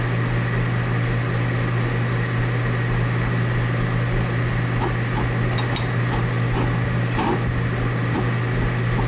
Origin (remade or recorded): recorded